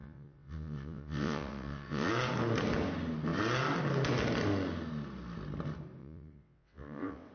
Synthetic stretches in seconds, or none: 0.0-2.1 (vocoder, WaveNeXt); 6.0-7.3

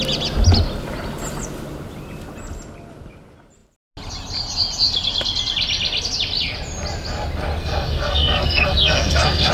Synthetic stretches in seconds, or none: 7.6-9.5 (codec, SNAC)

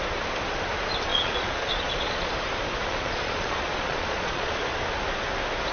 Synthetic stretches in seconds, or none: 1.1-2.3 (vocoder, Vocos); 2.8-4.6

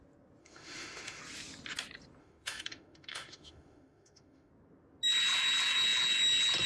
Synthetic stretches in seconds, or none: 0.4-1.2 (autoencoder, DAC-VAE); 2.2-4.5

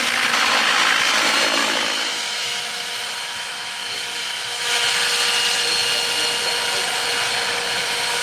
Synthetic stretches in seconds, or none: 1.6-4.9 (autoencoder, DAC-VAE)